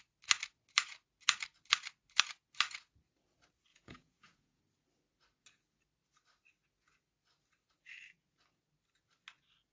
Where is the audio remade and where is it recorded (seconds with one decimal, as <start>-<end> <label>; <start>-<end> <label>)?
0.0-3.7 recorded; 3.7-4.6 remade; 4.6-9.7 recorded

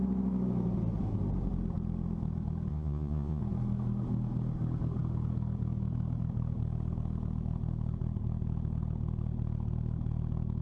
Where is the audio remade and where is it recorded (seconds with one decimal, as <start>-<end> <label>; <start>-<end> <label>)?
0.0-2.7 recorded; 2.7-3.4 remade; 3.4-10.6 recorded

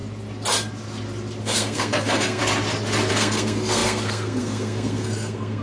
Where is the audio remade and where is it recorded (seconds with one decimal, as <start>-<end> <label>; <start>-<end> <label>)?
0.0-1.4 recorded; 1.4-2.4 remade; 2.4-3.1 recorded; 3.1-5.6 remade

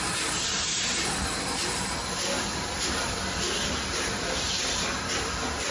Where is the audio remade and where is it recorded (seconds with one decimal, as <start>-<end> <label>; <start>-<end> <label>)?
0.0-2.0 remade; 2.0-3.6 recorded; 3.6-5.7 remade

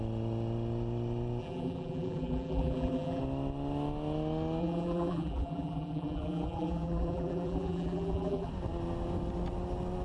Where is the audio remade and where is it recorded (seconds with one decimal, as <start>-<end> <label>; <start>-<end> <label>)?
0.0-1.4 recorded; 1.4-3.2 remade; 3.2-4.6 recorded; 4.6-8.5 remade; 8.5-10.0 recorded

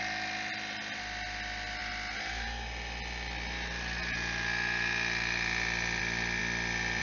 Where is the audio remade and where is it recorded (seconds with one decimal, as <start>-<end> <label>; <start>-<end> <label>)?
0.0-7.0 recorded

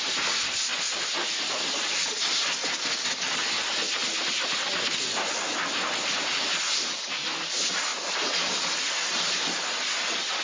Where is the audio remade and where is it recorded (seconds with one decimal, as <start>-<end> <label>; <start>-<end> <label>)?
0.0-10.4 recorded